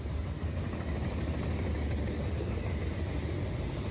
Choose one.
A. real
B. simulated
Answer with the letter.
A